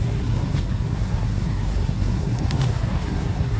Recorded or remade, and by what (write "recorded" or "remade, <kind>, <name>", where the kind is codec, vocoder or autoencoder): remade, codec, SNAC